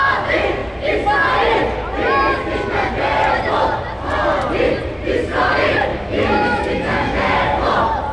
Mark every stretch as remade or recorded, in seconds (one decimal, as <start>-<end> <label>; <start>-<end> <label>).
0.0-5.9 recorded; 5.9-7.4 remade; 7.4-8.1 recorded